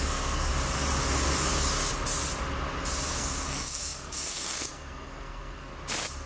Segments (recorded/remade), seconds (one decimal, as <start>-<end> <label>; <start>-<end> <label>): 0.0-0.5 remade; 0.5-3.1 recorded; 3.1-5.7 remade; 5.7-6.3 recorded